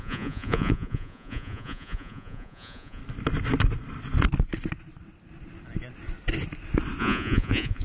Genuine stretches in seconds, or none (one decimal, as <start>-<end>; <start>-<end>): 3.0-7.0